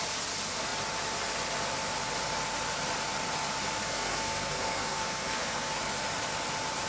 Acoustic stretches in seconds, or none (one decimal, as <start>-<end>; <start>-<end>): 0.0-3.8; 5.8-6.9